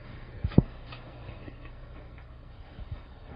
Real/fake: fake